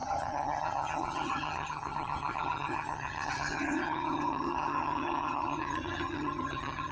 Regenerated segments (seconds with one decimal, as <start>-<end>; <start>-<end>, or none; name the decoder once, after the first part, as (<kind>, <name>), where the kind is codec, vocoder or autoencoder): 0.0-6.9 (vocoder, HiFi-GAN)